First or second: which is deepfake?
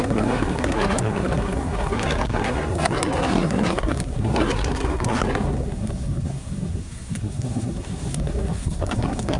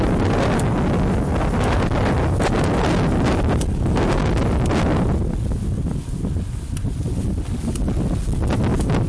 first